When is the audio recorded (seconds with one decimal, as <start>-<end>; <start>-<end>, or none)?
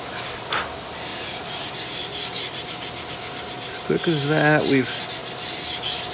0.0-1.1; 1.7-6.1